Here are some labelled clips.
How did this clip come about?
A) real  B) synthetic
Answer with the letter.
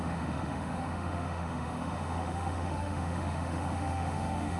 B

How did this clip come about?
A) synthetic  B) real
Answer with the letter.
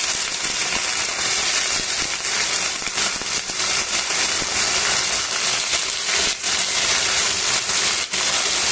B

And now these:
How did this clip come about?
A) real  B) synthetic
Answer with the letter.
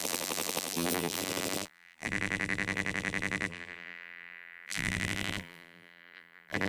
B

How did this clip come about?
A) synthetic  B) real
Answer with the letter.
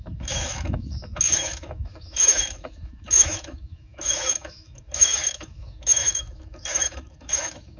A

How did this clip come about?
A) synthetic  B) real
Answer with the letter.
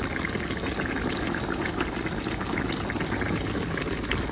B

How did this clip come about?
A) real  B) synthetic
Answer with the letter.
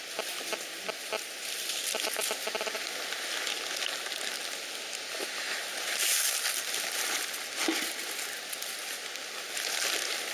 A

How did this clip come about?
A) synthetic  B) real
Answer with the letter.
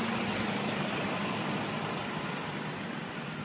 B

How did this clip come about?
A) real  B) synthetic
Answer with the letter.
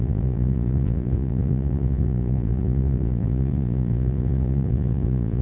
B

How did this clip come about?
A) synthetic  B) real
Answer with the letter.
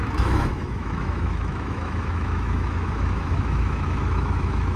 A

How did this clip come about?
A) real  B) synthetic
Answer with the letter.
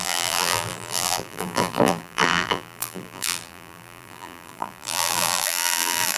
B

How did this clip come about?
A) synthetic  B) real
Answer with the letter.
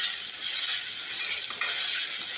B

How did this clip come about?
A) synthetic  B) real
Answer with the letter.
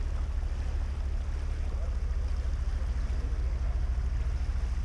B